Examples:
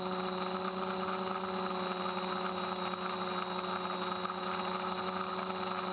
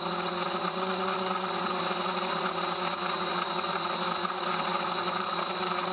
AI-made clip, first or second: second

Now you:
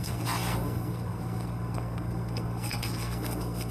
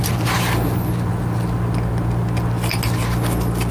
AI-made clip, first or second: first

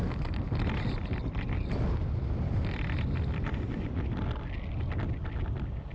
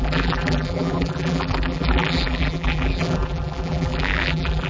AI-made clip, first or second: second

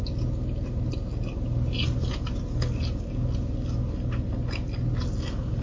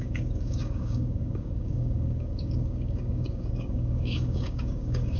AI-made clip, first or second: second